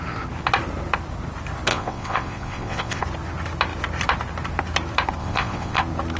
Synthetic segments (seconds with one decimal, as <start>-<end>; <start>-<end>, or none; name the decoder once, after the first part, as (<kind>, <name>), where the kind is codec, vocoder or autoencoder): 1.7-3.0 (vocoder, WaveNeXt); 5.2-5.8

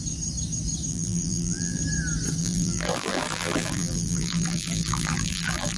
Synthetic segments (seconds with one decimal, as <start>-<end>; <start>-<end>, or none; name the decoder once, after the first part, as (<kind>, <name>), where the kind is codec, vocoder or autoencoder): 0.9-1.8 (vocoder, BigVGAN v2); 2.4-5.8

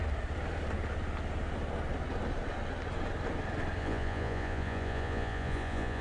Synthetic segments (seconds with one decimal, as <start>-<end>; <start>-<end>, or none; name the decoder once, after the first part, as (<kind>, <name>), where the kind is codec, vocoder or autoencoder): 3.8-6.0 (vocoder, Vocos)

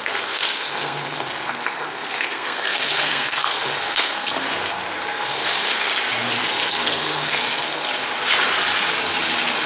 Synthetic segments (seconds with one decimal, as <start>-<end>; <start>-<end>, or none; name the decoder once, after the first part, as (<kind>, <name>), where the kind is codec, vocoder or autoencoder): 0.0-5.9 (codec, SNAC); 6.4-7.8

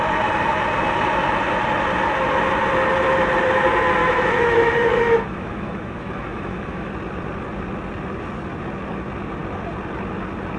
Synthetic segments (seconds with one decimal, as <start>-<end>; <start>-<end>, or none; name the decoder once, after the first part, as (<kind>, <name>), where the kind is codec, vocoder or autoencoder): 4.0-6.9 (autoencoder, DAC-VAE)